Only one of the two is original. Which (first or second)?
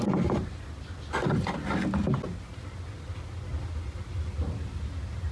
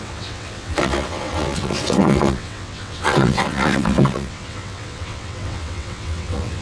first